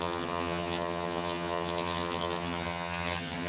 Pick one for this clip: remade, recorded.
remade